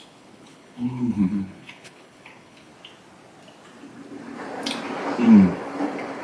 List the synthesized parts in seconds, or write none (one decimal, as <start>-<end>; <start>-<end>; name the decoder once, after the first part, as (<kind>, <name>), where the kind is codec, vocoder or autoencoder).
0.0-2.7 (codec, HILCodec)